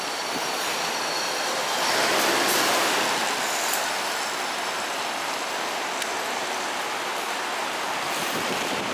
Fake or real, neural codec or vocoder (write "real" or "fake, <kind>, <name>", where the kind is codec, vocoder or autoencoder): real